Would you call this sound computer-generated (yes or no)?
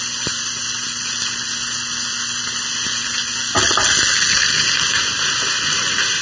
no